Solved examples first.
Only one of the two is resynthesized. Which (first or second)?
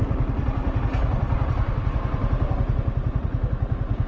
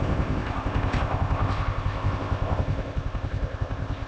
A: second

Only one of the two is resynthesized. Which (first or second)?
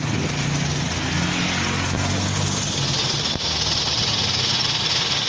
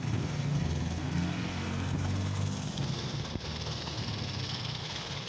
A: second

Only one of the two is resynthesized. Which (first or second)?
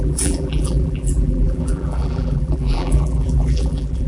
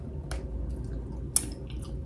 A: first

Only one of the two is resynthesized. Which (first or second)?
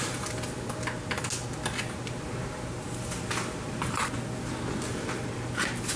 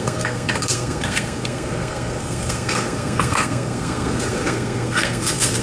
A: second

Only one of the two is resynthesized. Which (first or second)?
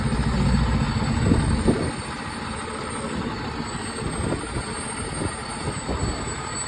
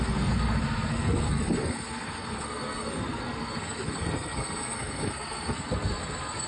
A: second